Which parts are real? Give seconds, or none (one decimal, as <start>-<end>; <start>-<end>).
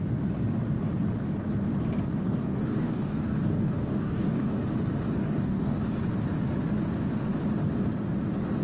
0.0-2.2; 4.6-5.2; 5.8-8.6